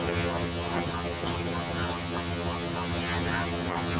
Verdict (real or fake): fake